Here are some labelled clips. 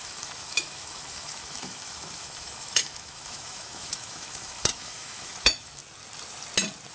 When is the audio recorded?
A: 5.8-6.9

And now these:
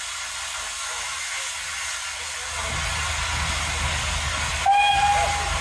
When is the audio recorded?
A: 0.0-0.8; 1.5-5.6

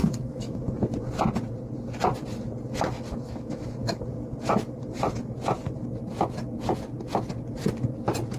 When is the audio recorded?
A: 0.6-3.1; 4.0-8.4

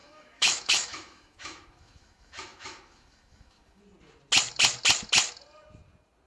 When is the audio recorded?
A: 3.8-6.3

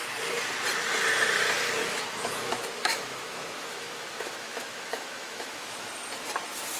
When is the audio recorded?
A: 0.0-1.8; 5.9-6.8

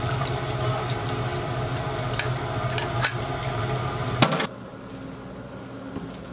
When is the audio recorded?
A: 0.0-6.3

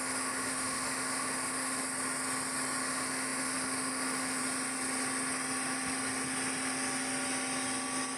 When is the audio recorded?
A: 1.8-2.8; 4.4-8.2